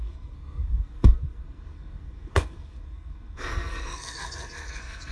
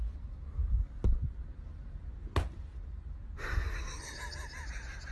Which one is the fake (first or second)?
first